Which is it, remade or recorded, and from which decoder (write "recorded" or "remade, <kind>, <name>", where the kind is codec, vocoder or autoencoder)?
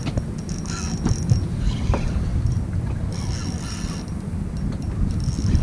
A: recorded